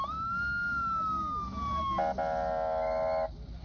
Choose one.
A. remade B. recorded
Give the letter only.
B